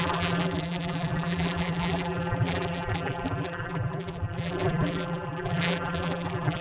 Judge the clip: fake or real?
fake